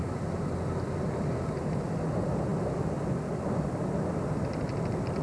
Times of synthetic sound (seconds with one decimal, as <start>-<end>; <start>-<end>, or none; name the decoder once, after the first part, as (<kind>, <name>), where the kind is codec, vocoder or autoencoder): none